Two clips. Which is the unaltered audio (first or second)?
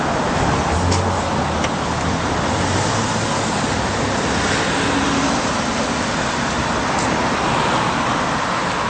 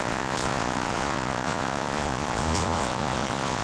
first